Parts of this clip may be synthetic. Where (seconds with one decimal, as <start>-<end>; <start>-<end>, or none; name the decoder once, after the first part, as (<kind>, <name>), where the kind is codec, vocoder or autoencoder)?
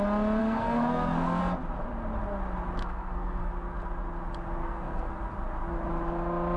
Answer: 0.4-1.4 (codec, SNAC); 2.8-3.5; 4.6-5.1